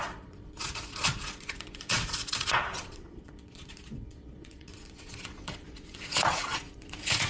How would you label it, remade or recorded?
remade